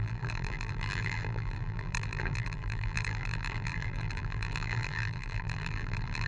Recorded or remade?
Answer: remade